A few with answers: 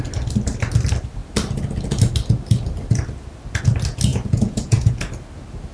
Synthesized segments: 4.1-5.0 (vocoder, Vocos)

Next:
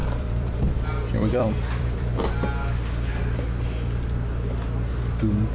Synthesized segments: 0.0-2.1 (vocoder, BigVGAN v2)

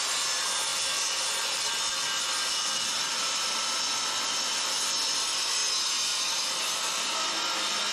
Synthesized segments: none

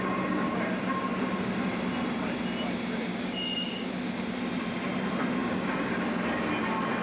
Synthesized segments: 3.1-3.9 (codec, DAC); 5.4-5.9

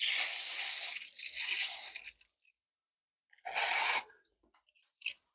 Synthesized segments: none

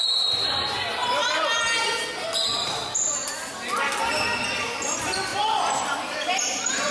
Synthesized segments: none

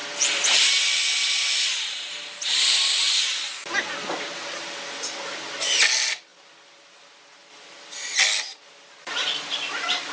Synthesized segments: none

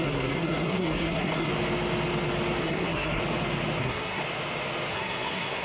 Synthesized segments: 0.0-1.5 (codec, SNAC); 2.6-3.2; 3.8-4.2; 4.9-5.6